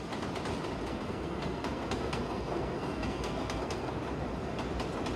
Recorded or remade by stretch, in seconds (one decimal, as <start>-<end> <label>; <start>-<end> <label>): 0.0-0.9 recorded; 0.9-4.0 remade; 4.0-5.2 recorded